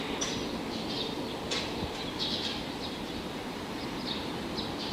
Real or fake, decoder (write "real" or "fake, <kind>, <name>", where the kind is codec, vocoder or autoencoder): real